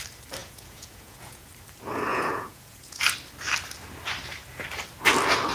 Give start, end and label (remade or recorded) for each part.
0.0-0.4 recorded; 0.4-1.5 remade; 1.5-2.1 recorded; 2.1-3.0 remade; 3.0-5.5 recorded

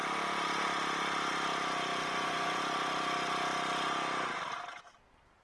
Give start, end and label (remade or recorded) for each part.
0.0-2.0 recorded; 2.0-2.6 remade; 2.6-5.4 recorded

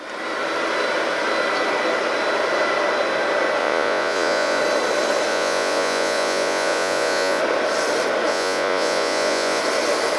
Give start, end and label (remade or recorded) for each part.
0.0-3.6 recorded; 3.6-4.6 remade; 4.6-5.3 recorded; 5.3-7.4 remade; 7.4-8.3 recorded; 8.3-9.6 remade; 9.6-10.2 recorded

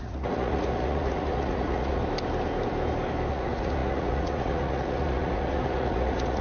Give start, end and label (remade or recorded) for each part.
0.0-2.0 remade; 2.0-3.3 recorded; 3.3-6.4 remade

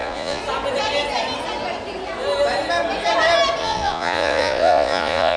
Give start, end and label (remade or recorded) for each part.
0.0-0.4 remade; 0.4-3.6 recorded; 3.6-5.4 remade

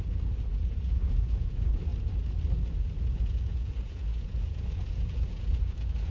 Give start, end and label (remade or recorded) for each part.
0.0-0.5 recorded; 0.5-1.9 remade; 1.9-2.8 recorded; 2.8-6.1 remade

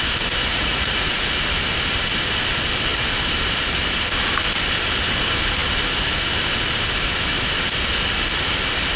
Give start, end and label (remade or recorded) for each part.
0.0-0.5 recorded; 0.5-1.3 remade; 1.3-9.0 recorded